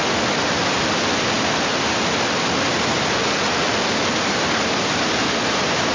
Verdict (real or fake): real